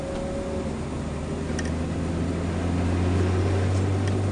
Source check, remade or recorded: recorded